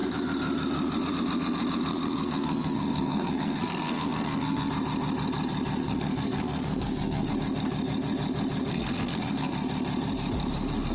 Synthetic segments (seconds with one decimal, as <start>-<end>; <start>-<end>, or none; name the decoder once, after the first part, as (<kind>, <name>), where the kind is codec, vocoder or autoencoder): 1.9-4.7 (codec, SNAC); 5.8-7.3; 8.7-9.5